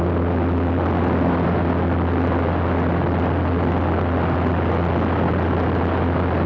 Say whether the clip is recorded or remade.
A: recorded